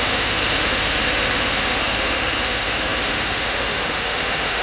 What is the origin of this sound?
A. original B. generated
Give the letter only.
B